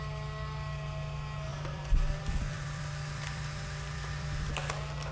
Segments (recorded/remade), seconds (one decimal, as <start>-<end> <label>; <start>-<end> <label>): 0.0-1.5 recorded; 1.5-4.5 remade; 4.5-5.1 recorded